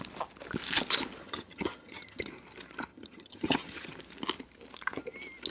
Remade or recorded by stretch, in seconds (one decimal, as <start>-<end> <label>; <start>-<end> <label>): 0.0-1.2 recorded; 1.2-2.3 remade; 2.3-2.9 recorded; 2.9-3.9 remade; 3.9-5.5 recorded